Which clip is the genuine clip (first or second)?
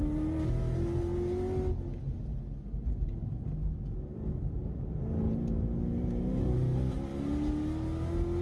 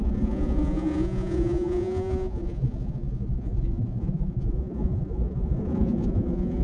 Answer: first